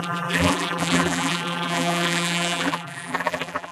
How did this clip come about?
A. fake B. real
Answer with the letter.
A